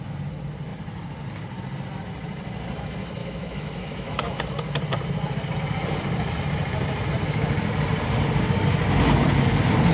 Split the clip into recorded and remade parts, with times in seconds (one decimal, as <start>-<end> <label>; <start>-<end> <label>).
0.0-3.2 recorded; 3.2-4.4 remade; 4.4-9.9 recorded